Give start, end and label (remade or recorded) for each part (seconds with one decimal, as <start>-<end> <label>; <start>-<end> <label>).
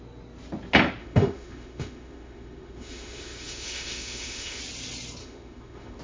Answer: 0.0-1.0 recorded; 1.0-4.6 remade; 4.6-5.2 recorded; 5.2-6.0 remade